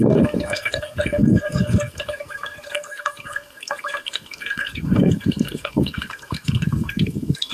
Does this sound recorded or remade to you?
remade